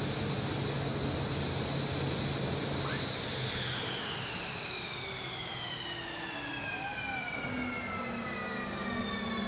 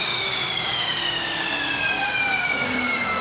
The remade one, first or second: second